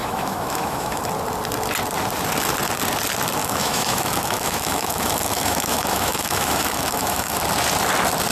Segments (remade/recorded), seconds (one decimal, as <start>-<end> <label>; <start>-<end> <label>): 0.0-1.0 remade; 1.0-3.4 recorded; 3.4-7.4 remade; 7.4-8.3 recorded